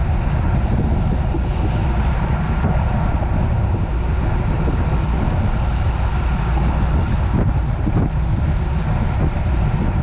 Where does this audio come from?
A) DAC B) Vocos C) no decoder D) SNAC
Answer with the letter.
C